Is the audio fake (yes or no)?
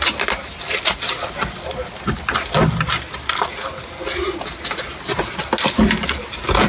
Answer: no